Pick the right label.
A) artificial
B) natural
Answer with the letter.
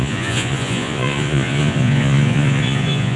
A